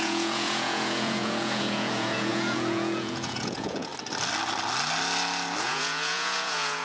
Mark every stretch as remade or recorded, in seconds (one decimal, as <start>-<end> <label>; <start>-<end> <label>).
0.0-3.9 remade; 3.9-5.6 recorded; 5.6-6.8 remade